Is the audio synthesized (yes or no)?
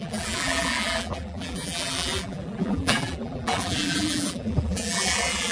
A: yes